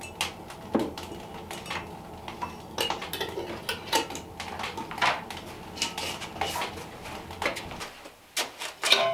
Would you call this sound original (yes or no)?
yes